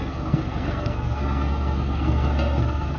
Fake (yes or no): yes